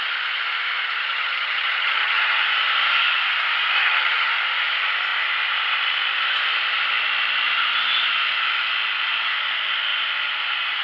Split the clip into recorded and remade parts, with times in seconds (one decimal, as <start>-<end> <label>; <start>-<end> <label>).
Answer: 0.0-1.0 recorded; 1.0-2.4 remade; 2.4-3.8 recorded; 3.8-4.3 remade; 4.3-10.8 recorded